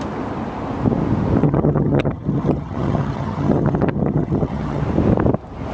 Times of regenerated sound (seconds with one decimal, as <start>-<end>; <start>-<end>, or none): 1.4-4.8